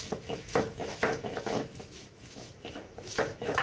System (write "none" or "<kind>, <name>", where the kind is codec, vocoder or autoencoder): autoencoder, DAC-VAE